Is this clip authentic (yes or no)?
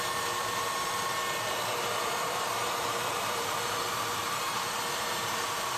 no